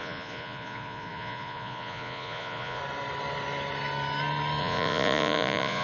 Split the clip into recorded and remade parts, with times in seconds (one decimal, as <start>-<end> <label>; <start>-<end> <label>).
0.0-2.8 remade; 2.8-4.6 recorded; 4.6-5.8 remade